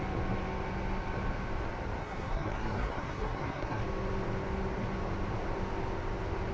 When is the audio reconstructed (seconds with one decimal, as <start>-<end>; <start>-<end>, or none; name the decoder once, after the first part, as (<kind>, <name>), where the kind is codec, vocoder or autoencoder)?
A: 2.0-3.8 (codec, SNAC)